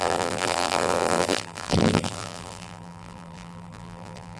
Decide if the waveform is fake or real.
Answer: fake